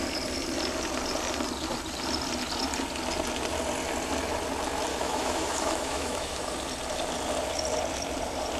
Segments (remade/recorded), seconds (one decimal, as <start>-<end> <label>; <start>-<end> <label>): 0.0-4.9 recorded; 4.9-6.5 remade; 6.5-8.6 recorded